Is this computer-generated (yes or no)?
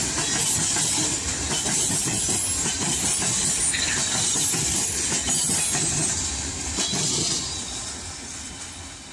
no